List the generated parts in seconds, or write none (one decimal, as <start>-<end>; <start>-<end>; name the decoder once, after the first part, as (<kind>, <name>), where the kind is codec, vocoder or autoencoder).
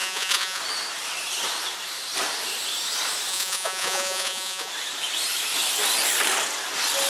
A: 0.0-0.6 (vocoder, Vocos); 3.3-4.7